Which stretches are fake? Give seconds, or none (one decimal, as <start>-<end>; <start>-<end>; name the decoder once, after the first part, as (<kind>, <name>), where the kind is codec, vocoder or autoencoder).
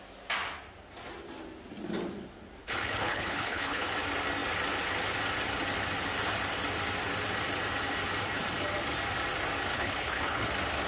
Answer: 2.6-3.9 (codec, HILCodec); 9.7-10.5